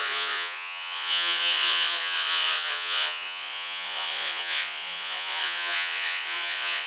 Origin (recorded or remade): remade